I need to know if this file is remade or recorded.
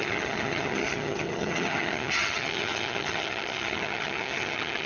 remade